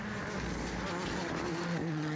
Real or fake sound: real